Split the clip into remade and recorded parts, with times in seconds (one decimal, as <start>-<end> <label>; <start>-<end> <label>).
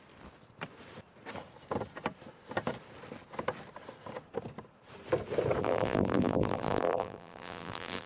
0.0-5.6 recorded; 5.6-8.1 remade